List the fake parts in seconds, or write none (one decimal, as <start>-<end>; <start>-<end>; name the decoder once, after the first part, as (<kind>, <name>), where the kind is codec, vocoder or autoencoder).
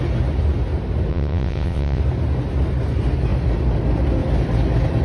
1.1-2.0 (vocoder, WaveNeXt)